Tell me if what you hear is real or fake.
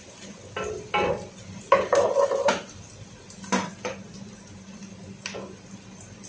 real